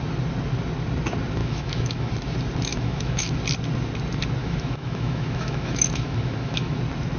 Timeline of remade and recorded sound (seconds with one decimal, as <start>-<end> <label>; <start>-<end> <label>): 0.0-1.4 recorded; 1.4-2.1 remade; 2.1-2.7 recorded; 2.7-3.4 remade; 3.4-4.4 recorded; 4.4-6.8 remade; 6.8-7.2 recorded